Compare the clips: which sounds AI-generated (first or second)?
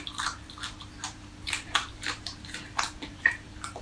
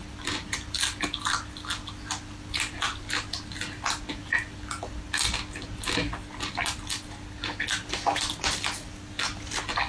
first